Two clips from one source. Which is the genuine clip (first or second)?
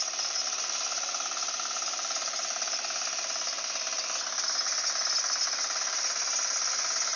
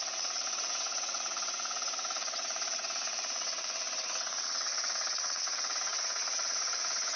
first